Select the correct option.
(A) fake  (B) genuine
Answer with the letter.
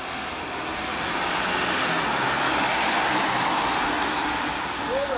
B